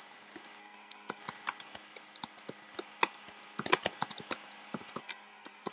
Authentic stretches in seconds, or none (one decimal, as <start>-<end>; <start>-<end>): 0.0-0.6; 1.2-5.0